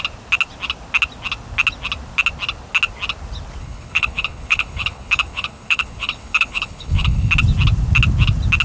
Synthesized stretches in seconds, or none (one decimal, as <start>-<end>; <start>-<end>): 3.6-7.3